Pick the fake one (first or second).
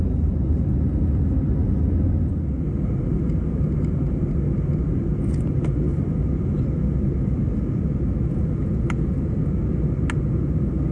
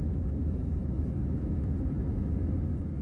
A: second